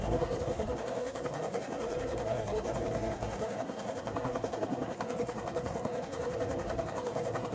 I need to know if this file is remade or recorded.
remade